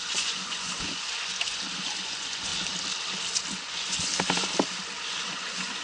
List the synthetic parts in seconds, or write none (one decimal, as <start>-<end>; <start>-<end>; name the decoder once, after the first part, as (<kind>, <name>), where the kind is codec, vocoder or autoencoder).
0.0-2.5 (vocoder, Vocos); 3.5-4.1; 5.0-5.8